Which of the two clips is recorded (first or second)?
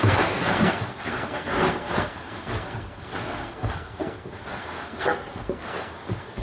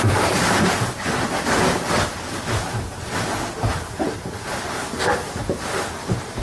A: second